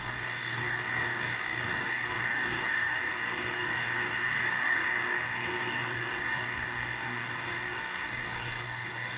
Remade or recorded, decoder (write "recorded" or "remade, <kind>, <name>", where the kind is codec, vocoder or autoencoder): remade, codec, DAC